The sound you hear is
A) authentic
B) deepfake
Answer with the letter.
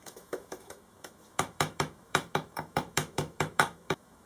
B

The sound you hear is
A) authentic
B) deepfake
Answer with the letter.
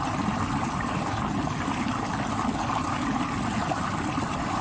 A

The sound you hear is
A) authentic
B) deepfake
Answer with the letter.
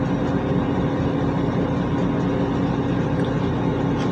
A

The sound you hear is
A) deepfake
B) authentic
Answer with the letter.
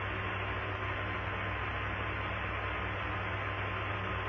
B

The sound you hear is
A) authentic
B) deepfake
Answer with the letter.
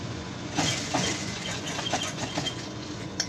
B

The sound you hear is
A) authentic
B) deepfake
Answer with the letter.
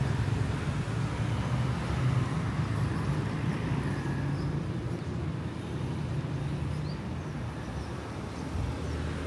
A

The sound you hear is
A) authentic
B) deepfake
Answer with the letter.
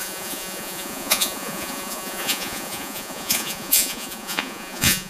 B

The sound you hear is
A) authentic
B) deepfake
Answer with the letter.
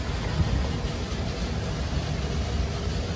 A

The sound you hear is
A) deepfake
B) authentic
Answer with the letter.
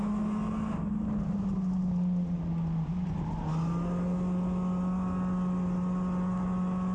B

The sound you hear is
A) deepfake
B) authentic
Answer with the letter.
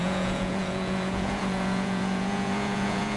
A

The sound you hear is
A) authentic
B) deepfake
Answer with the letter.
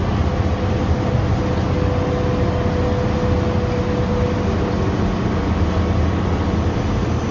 A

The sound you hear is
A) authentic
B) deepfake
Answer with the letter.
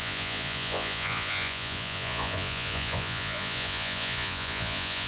B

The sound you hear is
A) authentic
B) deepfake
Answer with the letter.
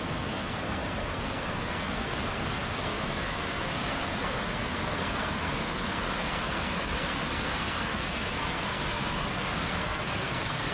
B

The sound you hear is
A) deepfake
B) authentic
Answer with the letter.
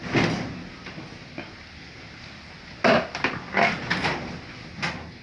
B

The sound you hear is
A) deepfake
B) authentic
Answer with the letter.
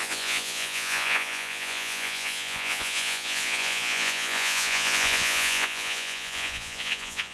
A